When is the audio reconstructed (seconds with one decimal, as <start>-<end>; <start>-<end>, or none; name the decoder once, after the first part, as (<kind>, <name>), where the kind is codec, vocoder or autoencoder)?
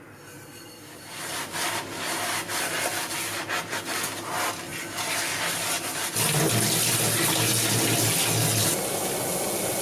none